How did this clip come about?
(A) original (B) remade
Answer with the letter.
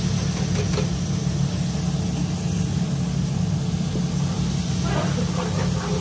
A